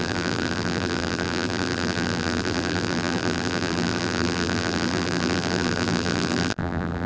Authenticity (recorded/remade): remade